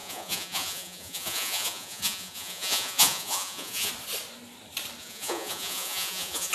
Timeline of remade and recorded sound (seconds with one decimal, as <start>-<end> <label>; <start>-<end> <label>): 0.0-3.9 remade; 3.9-5.0 recorded; 5.0-6.5 remade